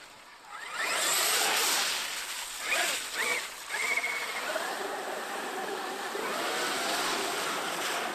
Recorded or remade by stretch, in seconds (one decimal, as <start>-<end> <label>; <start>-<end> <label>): 0.0-8.1 recorded